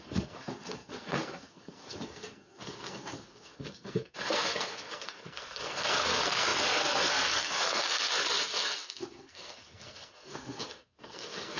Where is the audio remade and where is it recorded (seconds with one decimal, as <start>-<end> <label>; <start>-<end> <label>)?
0.0-11.6 remade